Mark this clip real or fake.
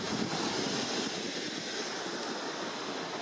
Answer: real